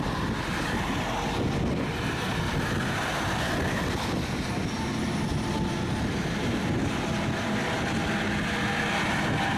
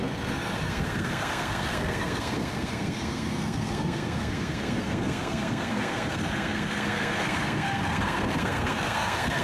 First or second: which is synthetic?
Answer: second